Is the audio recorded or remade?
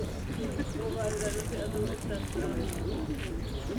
recorded